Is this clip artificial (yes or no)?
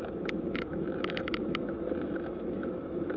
yes